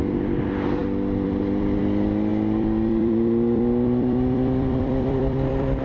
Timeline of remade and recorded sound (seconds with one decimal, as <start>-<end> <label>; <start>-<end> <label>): 0.0-0.8 recorded; 0.8-1.8 remade; 1.8-2.3 recorded; 2.3-5.8 remade